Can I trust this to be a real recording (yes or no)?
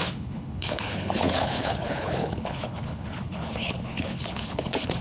no